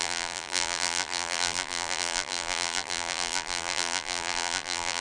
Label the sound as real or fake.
fake